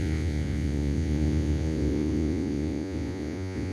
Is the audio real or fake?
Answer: fake